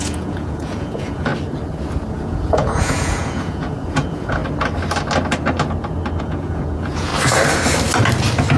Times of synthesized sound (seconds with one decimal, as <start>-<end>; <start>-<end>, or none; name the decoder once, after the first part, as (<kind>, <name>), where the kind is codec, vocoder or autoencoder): 0.0-1.3 (vocoder, Vocos); 2.1-4.4; 6.2-7.1